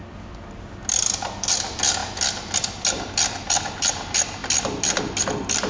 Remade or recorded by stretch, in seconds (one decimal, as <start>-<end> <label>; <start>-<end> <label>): 0.0-5.7 recorded